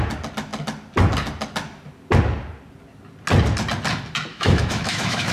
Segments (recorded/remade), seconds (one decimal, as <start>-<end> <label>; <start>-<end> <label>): 0.0-4.3 recorded; 4.3-5.3 remade